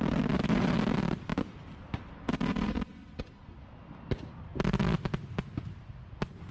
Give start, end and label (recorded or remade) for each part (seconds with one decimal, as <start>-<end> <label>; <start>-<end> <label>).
0.0-4.5 recorded; 4.5-5.0 remade; 5.0-6.5 recorded